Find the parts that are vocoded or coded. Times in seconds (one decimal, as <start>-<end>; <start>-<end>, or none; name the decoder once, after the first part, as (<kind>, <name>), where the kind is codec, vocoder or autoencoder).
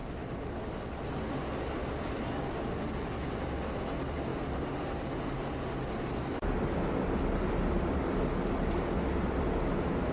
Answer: none